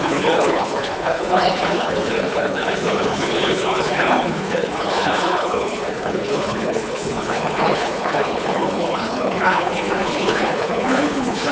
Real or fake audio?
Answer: fake